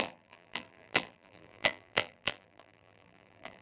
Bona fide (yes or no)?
no